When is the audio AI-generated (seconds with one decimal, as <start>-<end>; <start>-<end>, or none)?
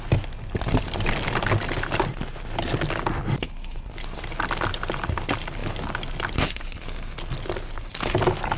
none